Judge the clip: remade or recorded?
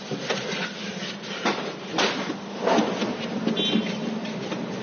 recorded